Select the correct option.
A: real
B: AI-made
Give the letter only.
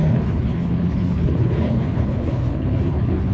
B